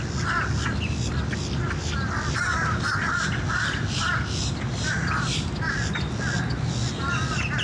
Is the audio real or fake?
real